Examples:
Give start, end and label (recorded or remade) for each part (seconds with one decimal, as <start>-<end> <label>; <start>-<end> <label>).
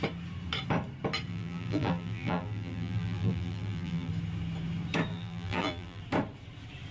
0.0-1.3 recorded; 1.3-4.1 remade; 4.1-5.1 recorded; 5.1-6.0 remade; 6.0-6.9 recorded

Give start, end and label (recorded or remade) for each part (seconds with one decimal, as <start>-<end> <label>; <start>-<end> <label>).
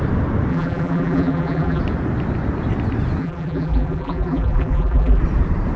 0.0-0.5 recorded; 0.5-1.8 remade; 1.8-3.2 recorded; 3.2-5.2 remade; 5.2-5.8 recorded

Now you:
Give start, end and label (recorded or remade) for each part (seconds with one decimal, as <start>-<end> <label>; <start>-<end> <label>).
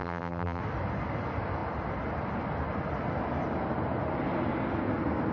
0.0-0.6 remade; 0.6-5.3 recorded